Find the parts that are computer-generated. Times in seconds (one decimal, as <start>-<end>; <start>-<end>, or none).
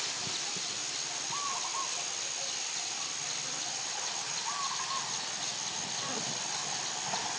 none